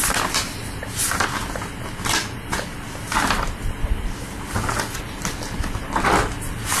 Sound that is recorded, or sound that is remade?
recorded